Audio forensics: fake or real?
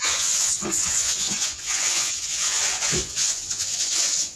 fake